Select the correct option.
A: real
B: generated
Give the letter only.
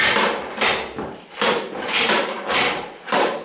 A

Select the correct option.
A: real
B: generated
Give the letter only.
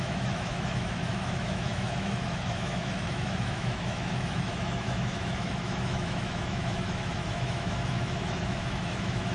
B